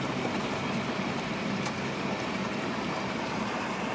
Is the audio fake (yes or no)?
yes